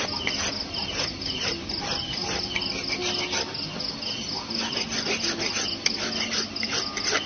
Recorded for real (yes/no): yes